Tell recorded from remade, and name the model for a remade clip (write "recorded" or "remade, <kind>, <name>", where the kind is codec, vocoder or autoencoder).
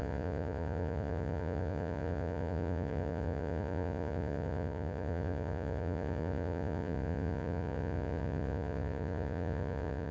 remade, vocoder, Vocos